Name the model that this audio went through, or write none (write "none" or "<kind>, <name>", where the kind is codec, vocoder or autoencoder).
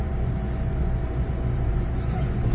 vocoder, Vocos